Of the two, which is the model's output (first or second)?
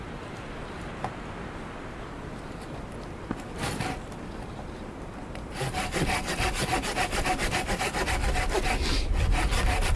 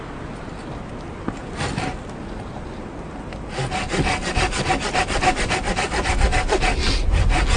first